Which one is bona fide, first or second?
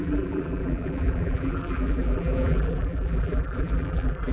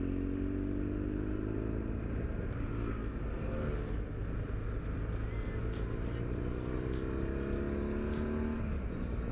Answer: second